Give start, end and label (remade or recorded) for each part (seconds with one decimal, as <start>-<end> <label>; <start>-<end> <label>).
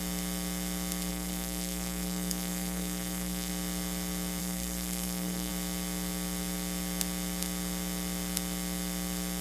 0.0-1.1 recorded; 1.1-3.5 remade; 3.5-4.4 recorded; 4.4-5.5 remade; 5.5-9.4 recorded